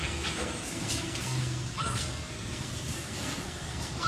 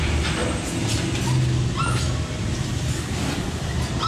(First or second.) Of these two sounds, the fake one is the first